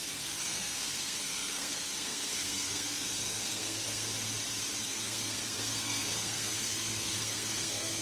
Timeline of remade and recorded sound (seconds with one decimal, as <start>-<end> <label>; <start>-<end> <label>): 0.0-4.1 remade; 4.1-4.8 recorded; 4.8-8.0 remade